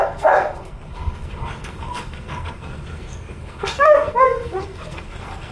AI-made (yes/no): yes